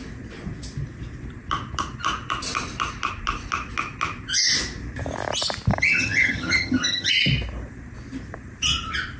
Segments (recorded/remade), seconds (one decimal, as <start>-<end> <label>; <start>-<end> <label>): 0.0-5.7 recorded; 5.7-7.1 remade; 7.1-9.2 recorded